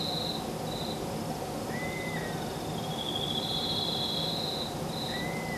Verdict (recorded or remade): recorded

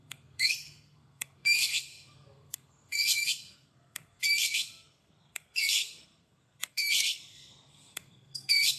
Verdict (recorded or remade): remade